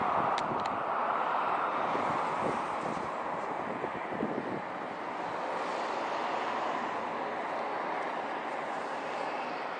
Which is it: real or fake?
real